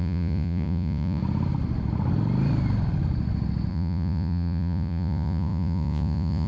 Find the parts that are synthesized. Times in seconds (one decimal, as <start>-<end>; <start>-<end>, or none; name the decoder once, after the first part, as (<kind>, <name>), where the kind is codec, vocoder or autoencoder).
0.0-1.2 (vocoder, Vocos); 3.7-6.5